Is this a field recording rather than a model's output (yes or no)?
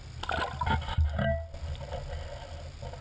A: yes